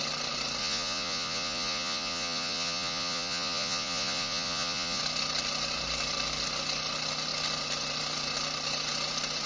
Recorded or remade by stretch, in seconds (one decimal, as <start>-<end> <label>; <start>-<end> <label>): 0.0-0.6 recorded; 0.6-5.0 remade; 5.0-9.5 recorded